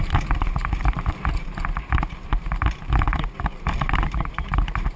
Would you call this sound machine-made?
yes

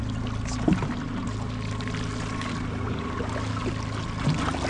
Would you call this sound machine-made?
no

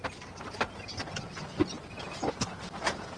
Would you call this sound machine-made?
yes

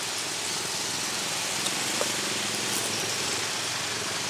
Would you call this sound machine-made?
no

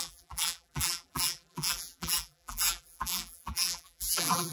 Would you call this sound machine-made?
yes